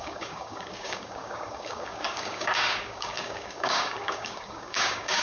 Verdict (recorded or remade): remade